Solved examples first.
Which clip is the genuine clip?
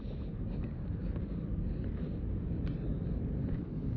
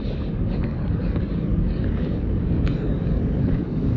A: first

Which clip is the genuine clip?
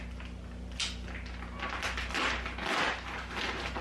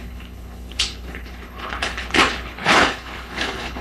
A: first